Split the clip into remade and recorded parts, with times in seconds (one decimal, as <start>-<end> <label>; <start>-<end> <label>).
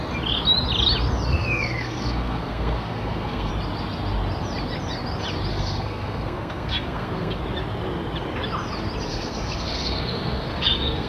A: 0.0-1.3 recorded; 1.3-3.5 remade; 3.5-5.5 recorded; 5.5-7.4 remade; 7.4-9.1 recorded; 9.1-11.1 remade